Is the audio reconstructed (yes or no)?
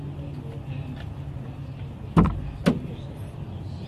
no